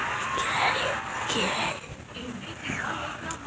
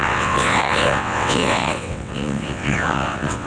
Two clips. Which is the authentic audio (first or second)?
first